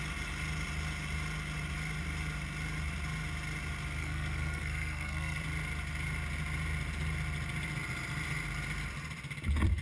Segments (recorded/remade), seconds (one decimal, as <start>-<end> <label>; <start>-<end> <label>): 0.0-4.0 recorded; 4.0-5.4 remade; 5.4-9.8 recorded